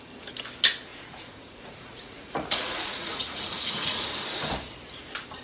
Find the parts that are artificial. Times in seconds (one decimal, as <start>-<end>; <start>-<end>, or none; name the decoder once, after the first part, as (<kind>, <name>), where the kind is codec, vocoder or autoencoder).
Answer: 0.9-4.1 (vocoder, Vocos)